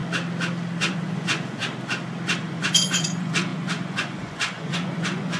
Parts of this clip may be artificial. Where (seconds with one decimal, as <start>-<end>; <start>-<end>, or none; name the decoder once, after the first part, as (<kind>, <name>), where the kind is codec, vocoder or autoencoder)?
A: 0.8-1.6 (vocoder, Vocos); 2.4-5.4